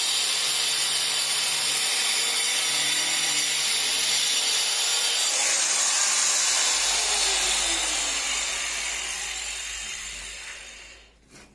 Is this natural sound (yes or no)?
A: yes